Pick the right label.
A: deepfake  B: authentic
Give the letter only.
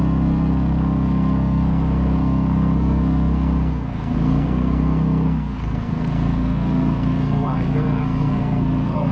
A